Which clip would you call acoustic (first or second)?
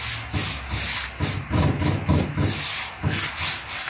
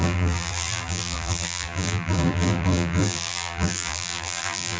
first